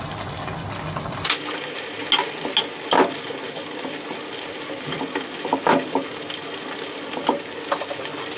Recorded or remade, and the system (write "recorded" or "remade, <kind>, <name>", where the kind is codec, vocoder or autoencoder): recorded